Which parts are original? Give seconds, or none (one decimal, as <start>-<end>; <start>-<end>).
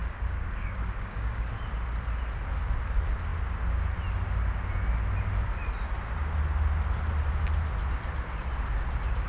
1.5-9.3